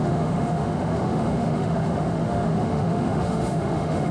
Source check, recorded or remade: remade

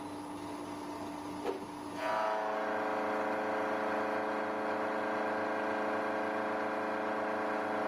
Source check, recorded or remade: recorded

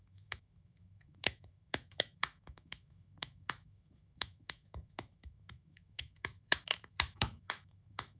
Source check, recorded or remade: remade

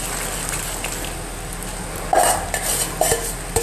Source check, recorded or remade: recorded